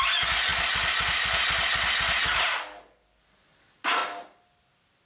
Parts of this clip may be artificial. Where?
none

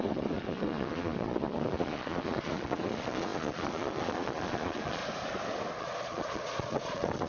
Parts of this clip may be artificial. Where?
0.0-5.0 (vocoder, Vocos); 5.8-7.3

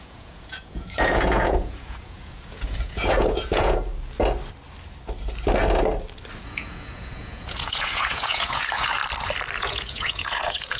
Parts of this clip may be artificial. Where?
0.0-3.9 (vocoder, Vocos); 6.4-9.0; 9.6-10.8

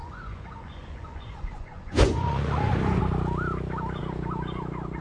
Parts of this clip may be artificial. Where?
0.0-3.0 (vocoder, Vocos)

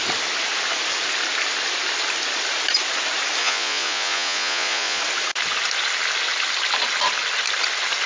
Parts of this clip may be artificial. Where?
3.4-5.0 (vocoder, Vocos)